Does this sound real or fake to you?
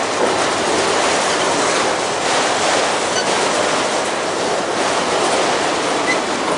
real